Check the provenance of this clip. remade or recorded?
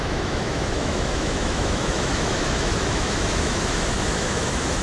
remade